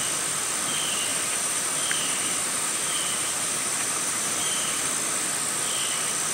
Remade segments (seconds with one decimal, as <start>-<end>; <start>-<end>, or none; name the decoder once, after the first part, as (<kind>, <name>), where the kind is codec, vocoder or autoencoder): 1.1-4.9 (vocoder, BigVGAN v2)